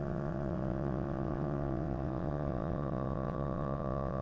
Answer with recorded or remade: remade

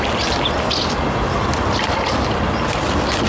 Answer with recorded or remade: recorded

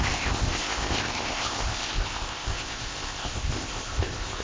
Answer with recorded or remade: remade